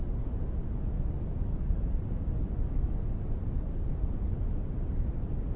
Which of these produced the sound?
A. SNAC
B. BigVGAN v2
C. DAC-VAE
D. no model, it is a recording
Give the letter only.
D